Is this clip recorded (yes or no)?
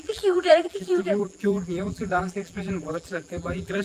no